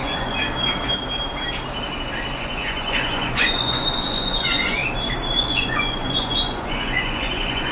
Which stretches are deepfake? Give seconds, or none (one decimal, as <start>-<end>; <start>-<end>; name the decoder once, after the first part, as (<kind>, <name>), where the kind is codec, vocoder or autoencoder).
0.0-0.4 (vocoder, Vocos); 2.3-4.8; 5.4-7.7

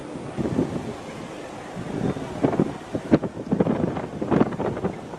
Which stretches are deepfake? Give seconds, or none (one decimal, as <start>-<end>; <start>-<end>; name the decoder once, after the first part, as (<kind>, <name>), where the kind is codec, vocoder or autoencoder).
none

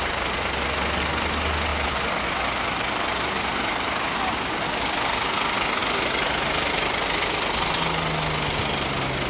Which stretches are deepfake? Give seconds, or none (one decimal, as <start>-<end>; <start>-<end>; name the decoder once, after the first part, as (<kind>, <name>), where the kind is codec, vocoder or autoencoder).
none

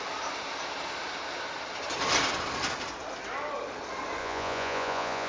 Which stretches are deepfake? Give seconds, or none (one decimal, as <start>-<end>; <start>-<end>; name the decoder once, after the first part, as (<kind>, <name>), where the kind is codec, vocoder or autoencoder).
4.2-5.3 (vocoder, Vocos)

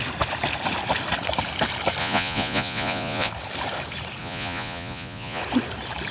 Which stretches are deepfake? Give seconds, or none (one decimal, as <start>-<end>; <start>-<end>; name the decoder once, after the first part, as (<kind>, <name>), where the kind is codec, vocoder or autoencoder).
2.0-3.3 (vocoder, Vocos); 4.2-5.4